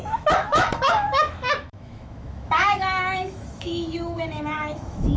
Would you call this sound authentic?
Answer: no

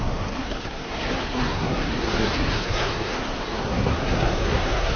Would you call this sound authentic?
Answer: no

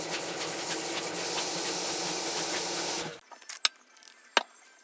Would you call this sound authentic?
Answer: yes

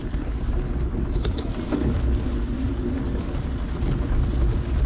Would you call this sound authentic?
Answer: yes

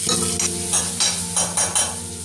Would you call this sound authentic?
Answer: yes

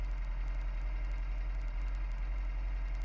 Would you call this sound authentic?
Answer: yes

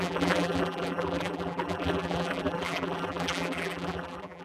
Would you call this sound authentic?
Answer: no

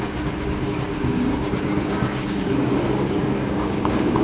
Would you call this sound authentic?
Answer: no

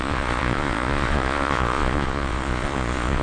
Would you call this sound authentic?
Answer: no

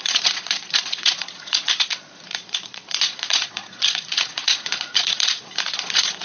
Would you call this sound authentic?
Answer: no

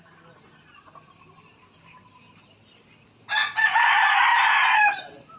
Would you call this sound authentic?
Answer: yes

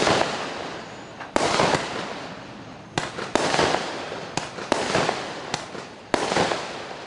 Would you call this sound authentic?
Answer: yes